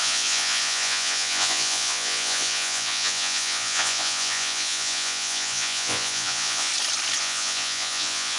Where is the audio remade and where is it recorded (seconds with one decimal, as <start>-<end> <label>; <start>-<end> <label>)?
0.0-6.7 remade; 6.7-7.2 recorded; 7.2-8.4 remade